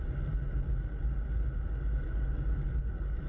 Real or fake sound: real